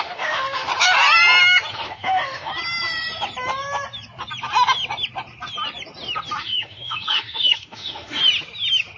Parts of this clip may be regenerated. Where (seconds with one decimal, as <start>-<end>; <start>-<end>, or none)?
0.0-0.7; 1.7-2.5; 6.4-8.2